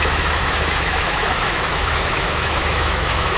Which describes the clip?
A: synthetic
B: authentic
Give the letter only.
A